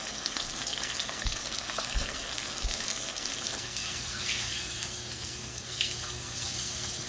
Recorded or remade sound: remade